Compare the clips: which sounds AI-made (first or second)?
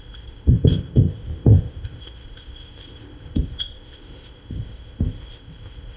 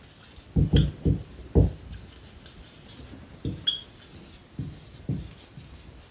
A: first